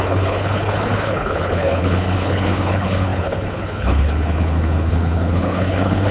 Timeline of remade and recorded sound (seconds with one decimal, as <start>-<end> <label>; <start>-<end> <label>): 0.0-6.1 remade